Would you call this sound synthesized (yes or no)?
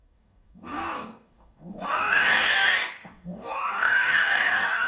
yes